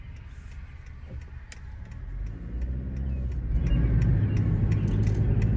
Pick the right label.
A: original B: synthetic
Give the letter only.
A